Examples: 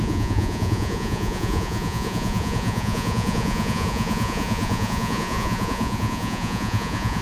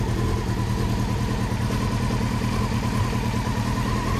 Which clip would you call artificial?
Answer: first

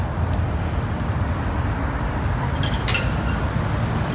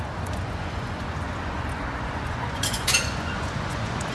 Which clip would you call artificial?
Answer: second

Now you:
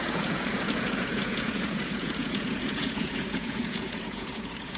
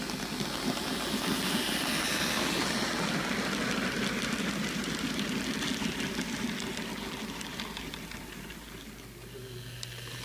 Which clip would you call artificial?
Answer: first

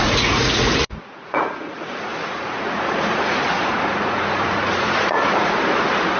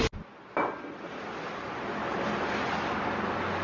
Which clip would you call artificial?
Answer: first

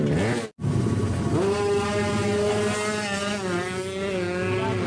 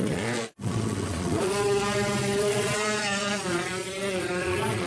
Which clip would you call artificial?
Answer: second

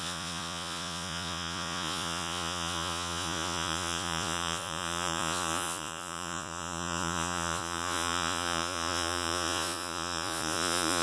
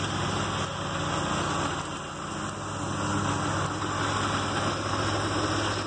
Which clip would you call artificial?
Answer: first